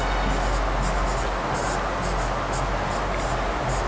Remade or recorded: recorded